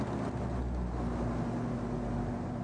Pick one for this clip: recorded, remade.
recorded